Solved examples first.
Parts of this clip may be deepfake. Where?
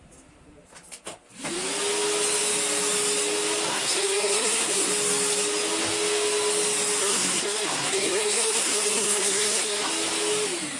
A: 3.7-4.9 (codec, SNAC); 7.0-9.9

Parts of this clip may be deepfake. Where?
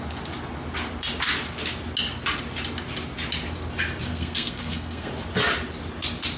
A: 4.1-5.1 (codec, SNAC)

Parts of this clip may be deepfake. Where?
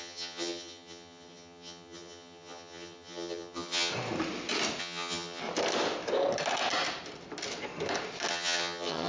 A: 0.0-3.9 (vocoder, HiFi-GAN); 4.8-5.4; 8.3-9.1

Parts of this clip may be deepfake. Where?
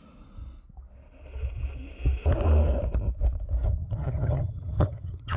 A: 3.8-5.4 (vocoder, HiFi-GAN)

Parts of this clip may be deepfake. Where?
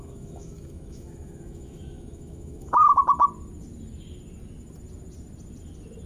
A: 0.0-3.0 (autoencoder, DAC-VAE)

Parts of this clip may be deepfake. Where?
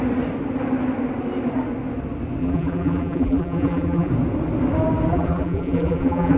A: 2.4-4.1 (vocoder, BigVGAN v2); 5.1-6.4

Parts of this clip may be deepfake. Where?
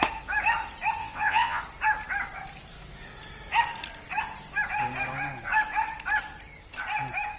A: 1.0-1.6 (vocoder, Vocos)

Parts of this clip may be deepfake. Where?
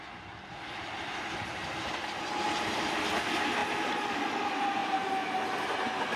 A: 4.8-5.3 (vocoder, BigVGAN v2)